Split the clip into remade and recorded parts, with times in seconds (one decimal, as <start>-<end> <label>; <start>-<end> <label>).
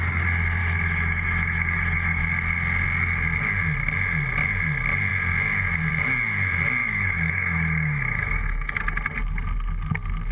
0.0-0.6 recorded; 0.6-2.2 remade; 2.2-6.8 recorded; 6.8-8.8 remade; 8.8-10.3 recorded